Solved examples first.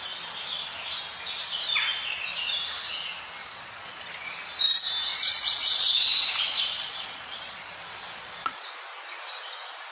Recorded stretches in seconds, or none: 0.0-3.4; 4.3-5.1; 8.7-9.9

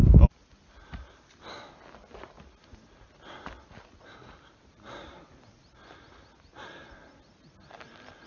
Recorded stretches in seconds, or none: 0.0-8.3

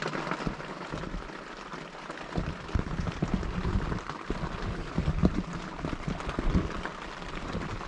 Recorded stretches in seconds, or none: 0.0-7.9

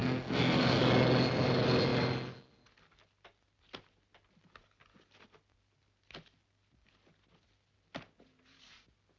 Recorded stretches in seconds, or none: 0.8-9.2

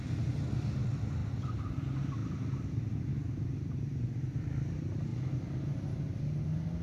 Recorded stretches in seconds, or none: 0.0-1.2; 1.8-2.2; 2.8-6.8

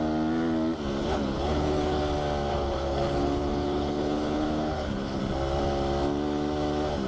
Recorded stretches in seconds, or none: 0.0-1.0; 2.0-2.5; 5.2-7.1

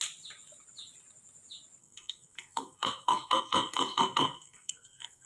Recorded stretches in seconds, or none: 0.0-1.8